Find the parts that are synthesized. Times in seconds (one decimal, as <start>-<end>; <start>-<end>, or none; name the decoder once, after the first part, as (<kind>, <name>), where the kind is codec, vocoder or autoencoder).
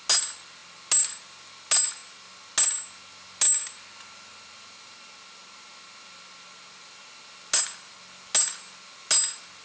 none